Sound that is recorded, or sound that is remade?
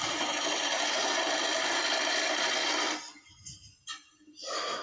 recorded